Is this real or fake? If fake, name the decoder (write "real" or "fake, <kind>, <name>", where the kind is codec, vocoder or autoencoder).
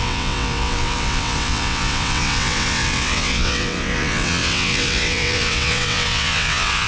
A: fake, vocoder, WaveNeXt